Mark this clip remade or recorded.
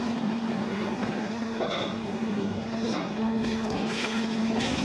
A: remade